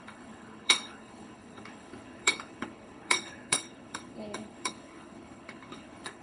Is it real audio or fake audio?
fake